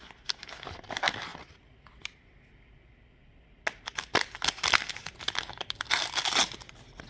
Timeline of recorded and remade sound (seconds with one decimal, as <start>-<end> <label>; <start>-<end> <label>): 0.0-7.1 recorded